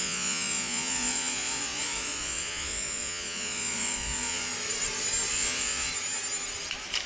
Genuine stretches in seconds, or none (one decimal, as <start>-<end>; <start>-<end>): 4.5-5.3; 5.9-7.1